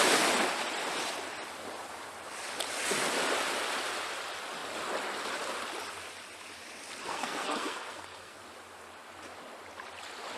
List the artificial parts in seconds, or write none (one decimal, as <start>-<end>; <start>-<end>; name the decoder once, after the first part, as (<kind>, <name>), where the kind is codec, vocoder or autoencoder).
7.0-8.4 (codec, SNAC)